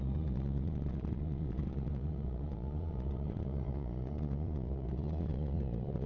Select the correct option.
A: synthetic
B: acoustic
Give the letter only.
A